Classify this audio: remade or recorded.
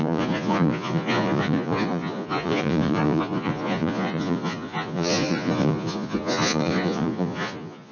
remade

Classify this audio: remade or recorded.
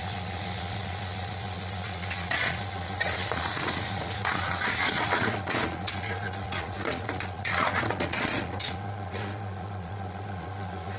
remade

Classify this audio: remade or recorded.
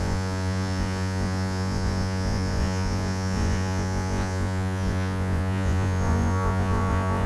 remade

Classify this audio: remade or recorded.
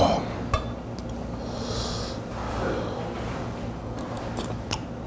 recorded